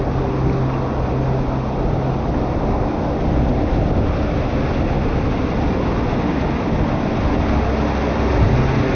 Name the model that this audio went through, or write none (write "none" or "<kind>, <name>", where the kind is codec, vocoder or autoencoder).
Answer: none